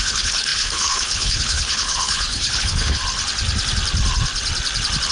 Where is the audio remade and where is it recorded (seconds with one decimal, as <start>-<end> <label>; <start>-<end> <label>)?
0.0-3.0 remade; 3.0-5.1 recorded